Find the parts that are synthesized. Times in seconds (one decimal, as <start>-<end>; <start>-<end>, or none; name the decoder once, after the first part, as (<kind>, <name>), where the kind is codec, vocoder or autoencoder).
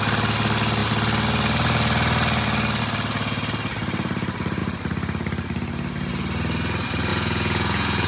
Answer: 7.1-8.1 (vocoder, Vocos)